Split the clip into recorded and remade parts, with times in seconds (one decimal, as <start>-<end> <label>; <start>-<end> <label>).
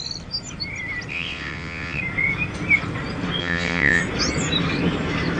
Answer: 0.0-1.1 recorded; 1.1-2.0 remade; 2.0-3.4 recorded; 3.4-4.0 remade; 4.0-5.4 recorded